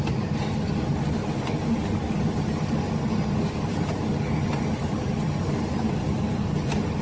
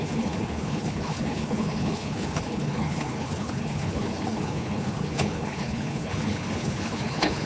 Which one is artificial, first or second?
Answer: second